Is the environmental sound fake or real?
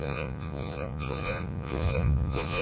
fake